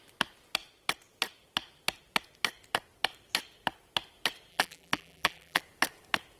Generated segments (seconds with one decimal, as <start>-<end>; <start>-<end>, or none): 4.5-5.6